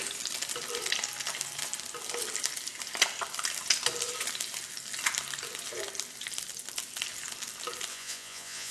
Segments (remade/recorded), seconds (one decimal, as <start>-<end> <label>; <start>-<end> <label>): 0.0-7.9 recorded; 7.9-8.7 remade